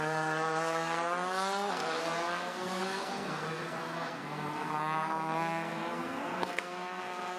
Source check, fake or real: fake